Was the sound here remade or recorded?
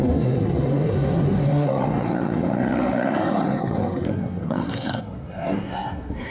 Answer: remade